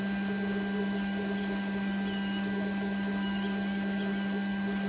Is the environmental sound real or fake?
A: real